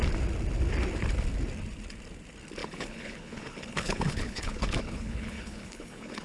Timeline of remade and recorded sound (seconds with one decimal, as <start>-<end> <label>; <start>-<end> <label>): 0.0-2.6 recorded; 2.6-6.2 remade